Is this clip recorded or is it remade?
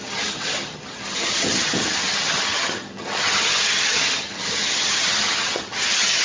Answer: remade